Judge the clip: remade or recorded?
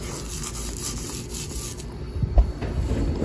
recorded